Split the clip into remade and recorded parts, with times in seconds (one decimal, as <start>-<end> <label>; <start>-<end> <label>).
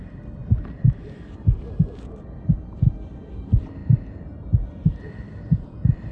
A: 0.0-3.8 remade; 3.8-5.1 recorded; 5.1-6.1 remade